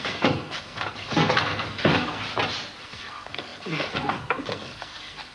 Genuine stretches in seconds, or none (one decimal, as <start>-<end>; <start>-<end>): 2.2-2.8